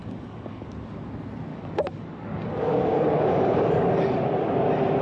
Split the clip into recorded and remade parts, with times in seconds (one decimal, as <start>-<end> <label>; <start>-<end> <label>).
0.0-0.7 remade; 0.7-1.5 recorded; 1.5-4.0 remade; 4.0-5.0 recorded